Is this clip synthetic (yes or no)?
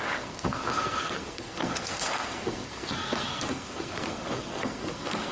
yes